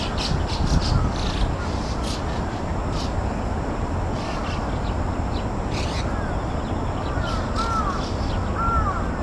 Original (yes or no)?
yes